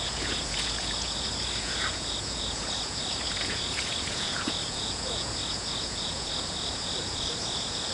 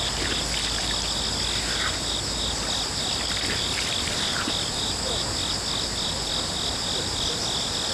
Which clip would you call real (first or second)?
second